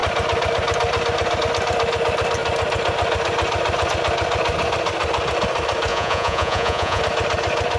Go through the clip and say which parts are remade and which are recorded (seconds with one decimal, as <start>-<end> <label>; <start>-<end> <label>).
0.0-5.9 recorded; 5.9-7.0 remade; 7.0-7.8 recorded